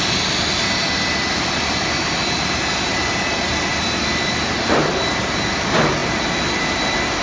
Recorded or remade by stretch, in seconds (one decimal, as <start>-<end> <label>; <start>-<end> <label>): 0.0-3.7 recorded; 3.7-4.5 remade; 4.5-7.2 recorded

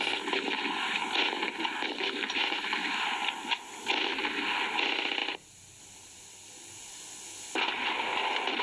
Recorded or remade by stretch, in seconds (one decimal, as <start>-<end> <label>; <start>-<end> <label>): 0.0-8.6 recorded

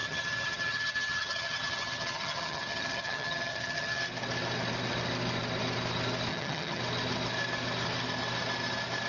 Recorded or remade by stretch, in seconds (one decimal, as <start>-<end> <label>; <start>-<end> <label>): 0.0-4.0 remade; 4.0-6.3 recorded; 6.3-6.8 remade; 6.8-9.1 recorded